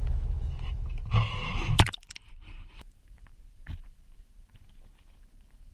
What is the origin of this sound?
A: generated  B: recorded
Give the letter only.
A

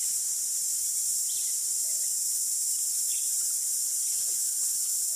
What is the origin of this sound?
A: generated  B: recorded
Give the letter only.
A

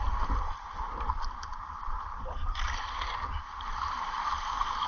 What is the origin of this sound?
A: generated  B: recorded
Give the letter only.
B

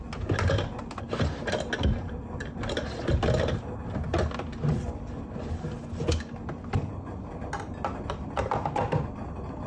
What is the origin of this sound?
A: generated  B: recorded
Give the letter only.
B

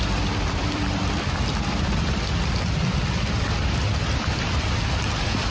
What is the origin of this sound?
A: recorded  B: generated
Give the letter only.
B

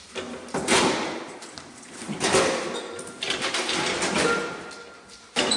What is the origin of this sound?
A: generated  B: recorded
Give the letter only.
A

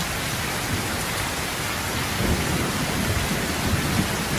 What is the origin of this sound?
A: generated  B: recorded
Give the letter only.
B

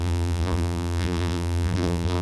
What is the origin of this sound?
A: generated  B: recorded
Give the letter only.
A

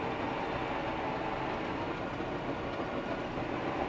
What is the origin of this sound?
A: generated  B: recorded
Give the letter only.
B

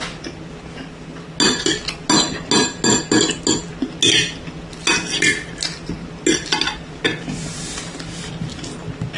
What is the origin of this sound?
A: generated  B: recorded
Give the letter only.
B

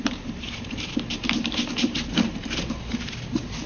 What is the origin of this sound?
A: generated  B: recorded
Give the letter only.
A